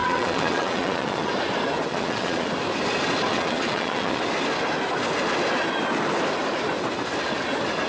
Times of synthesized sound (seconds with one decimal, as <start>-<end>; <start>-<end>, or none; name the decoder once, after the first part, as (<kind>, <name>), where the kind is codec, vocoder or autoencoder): 0.0-1.3 (vocoder, Vocos); 1.9-2.5; 3.3-4.2